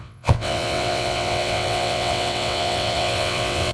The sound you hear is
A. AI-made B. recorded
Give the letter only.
A